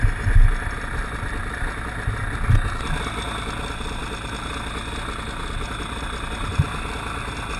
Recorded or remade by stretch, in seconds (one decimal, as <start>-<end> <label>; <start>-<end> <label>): 0.0-7.6 recorded